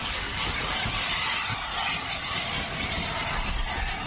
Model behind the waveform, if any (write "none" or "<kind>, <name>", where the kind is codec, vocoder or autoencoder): vocoder, BigVGAN v2